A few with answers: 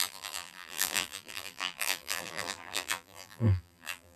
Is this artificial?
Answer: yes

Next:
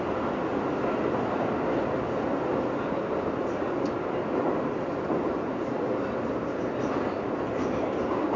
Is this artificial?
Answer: no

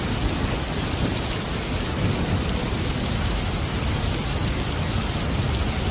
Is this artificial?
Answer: no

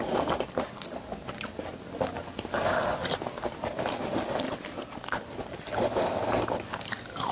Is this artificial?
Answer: no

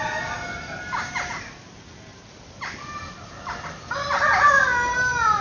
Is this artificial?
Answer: no